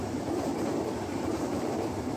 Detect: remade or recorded remade